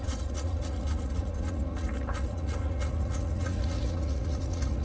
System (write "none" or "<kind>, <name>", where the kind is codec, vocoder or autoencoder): vocoder, Vocos